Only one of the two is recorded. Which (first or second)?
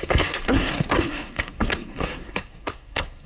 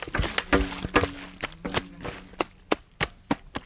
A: second